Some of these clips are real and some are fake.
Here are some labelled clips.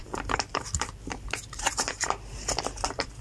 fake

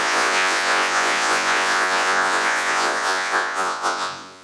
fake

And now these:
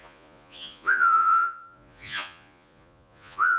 fake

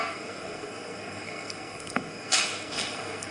fake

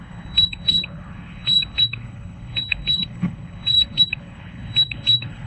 fake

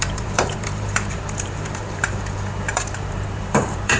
fake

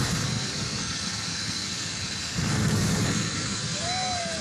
fake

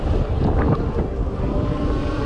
fake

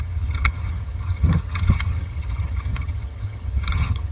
fake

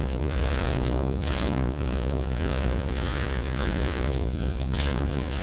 fake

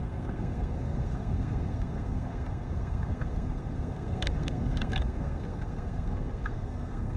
fake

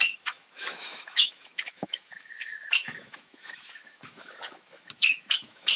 fake